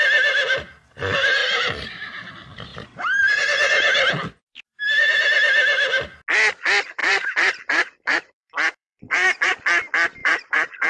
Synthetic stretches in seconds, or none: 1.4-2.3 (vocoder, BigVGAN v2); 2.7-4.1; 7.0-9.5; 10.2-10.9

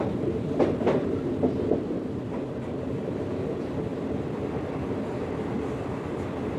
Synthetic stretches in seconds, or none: 0.0-3.9 (vocoder, BigVGAN v2); 5.4-6.6